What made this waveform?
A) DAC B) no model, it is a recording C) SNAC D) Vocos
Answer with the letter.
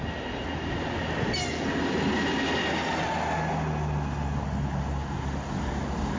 B